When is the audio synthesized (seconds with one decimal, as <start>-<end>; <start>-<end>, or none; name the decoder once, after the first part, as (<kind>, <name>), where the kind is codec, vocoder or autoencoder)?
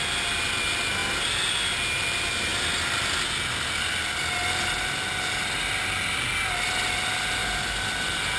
none